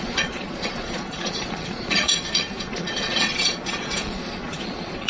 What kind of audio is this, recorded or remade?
remade